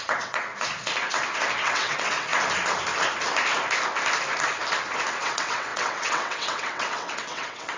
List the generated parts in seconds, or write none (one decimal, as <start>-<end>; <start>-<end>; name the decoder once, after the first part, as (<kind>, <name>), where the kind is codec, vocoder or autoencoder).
0.0-0.5 (vocoder, WaveNeXt); 1.6-2.3; 5.2-7.8